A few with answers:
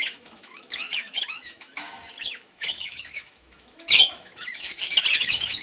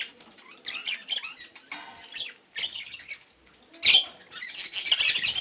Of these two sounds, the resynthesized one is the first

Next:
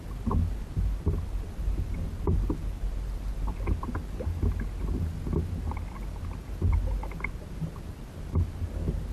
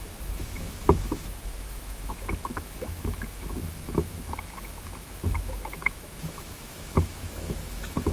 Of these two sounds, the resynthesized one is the second